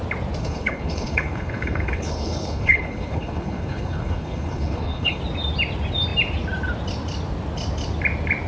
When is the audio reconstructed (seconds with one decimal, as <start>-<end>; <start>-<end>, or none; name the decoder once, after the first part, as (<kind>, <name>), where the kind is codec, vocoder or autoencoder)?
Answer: 0.4-5.2 (codec, HILCodec)